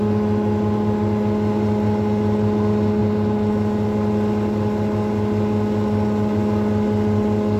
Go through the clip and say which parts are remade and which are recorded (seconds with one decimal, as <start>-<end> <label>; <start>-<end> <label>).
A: 0.0-7.6 recorded